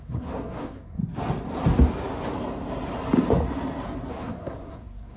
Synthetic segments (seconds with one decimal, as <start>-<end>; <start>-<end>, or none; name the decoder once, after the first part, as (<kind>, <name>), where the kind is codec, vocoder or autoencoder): 0.0-1.0 (codec, SNAC); 4.1-5.2